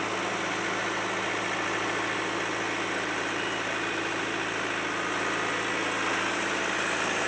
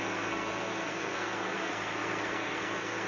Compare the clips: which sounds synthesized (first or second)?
second